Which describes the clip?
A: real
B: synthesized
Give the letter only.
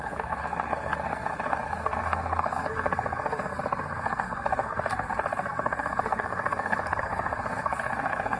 B